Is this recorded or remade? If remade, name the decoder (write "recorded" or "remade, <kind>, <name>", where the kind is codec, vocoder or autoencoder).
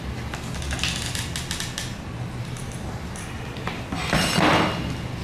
recorded